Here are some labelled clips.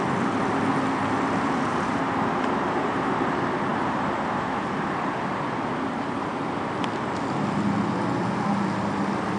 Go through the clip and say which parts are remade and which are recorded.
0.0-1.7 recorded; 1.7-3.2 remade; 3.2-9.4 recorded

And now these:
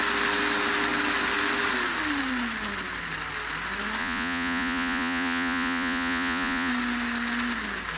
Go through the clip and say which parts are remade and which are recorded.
0.0-4.0 recorded; 4.0-6.7 remade; 6.7-8.0 recorded

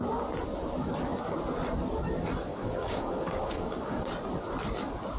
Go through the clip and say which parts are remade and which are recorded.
0.0-2.5 recorded; 2.5-4.0 remade; 4.0-5.2 recorded

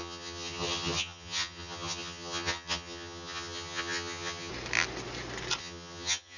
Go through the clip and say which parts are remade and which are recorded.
0.0-4.5 remade; 4.5-5.6 recorded; 5.6-6.4 remade